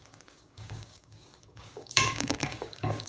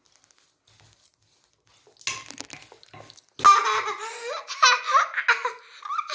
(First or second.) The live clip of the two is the second